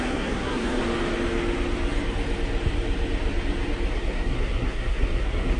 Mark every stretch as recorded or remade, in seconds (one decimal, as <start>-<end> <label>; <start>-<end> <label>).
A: 0.0-0.8 remade; 0.8-3.9 recorded; 3.9-5.6 remade